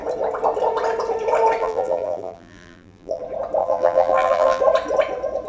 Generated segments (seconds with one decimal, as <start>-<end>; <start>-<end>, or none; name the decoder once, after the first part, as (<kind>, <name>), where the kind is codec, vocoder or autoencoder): 1.6-3.2 (vocoder, BigVGAN v2); 3.6-4.6

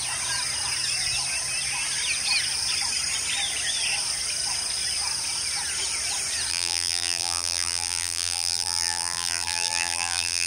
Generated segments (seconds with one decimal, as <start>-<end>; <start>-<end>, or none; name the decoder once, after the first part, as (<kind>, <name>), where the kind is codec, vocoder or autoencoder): 6.5-10.5 (vocoder, BigVGAN v2)

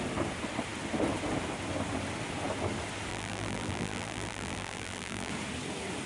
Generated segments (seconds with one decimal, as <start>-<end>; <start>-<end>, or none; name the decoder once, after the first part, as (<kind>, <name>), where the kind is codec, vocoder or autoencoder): 3.1-5.3 (vocoder, BigVGAN v2)

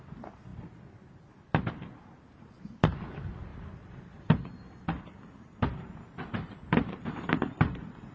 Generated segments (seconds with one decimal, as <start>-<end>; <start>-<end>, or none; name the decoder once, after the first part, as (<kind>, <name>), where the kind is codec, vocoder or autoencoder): 3.5-8.1 (vocoder, BigVGAN v2)

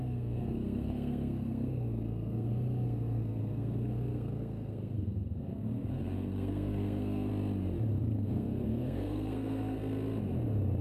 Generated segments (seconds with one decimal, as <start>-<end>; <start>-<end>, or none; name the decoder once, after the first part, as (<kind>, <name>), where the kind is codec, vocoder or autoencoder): 0.0-7.3 (codec, SNAC); 8.0-9.8

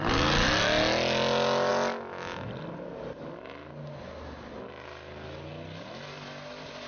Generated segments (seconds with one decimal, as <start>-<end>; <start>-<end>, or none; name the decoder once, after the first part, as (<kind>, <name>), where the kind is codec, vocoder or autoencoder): none